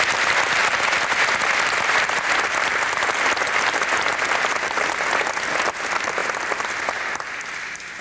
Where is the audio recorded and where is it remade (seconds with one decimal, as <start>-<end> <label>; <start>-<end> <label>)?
0.0-8.0 recorded